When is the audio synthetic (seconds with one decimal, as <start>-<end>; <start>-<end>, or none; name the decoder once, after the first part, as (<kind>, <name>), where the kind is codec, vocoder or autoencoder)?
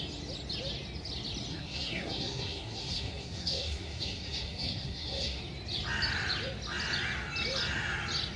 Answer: 1.5-5.4 (codec, SNAC)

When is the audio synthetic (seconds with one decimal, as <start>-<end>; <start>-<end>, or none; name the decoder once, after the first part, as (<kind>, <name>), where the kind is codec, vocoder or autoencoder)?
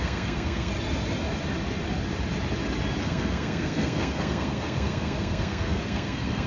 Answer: 0.0-0.7 (codec, SNAC); 3.0-6.5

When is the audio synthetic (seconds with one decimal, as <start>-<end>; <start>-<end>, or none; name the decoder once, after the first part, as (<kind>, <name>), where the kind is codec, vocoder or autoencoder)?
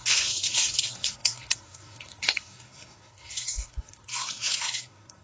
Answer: 0.0-5.2 (codec, SNAC)